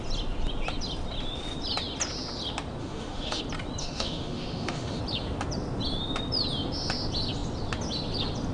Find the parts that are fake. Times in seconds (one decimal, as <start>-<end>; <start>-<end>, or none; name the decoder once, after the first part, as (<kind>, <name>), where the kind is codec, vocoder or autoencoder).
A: 2.8-3.4 (autoencoder, DAC-VAE); 3.8-5.0